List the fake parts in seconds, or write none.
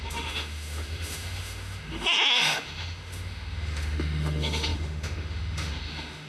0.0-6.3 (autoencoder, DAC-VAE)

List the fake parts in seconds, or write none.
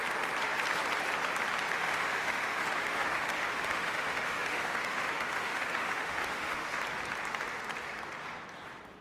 1.7-6.8 (autoencoder, DAC-VAE)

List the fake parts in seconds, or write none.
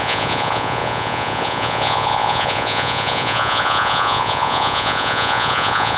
0.0-6.0 (vocoder, Vocos)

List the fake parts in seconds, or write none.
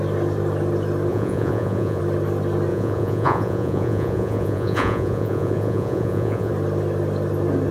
1.1-2.0 (vocoder, Vocos); 2.7-6.5